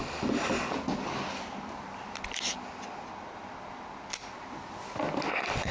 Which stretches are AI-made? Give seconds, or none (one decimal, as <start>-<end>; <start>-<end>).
none